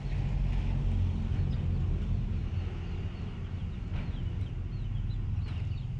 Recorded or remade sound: recorded